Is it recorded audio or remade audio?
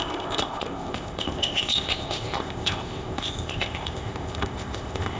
remade